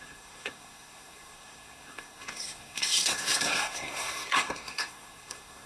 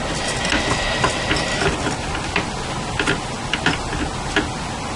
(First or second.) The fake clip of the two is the first